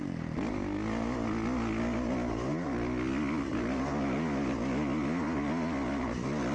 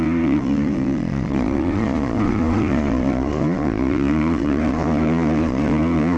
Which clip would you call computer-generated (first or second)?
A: second